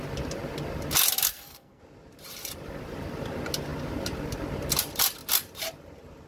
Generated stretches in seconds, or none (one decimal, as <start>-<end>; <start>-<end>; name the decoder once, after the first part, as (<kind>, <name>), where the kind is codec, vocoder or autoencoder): 1.3-1.8 (codec, SNAC)